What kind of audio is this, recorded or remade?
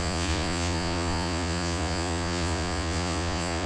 remade